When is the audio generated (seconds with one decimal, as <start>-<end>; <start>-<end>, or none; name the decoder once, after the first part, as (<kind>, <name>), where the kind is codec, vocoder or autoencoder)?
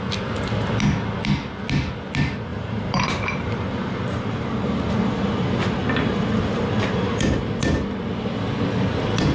2.5-7.4 (vocoder, BigVGAN v2)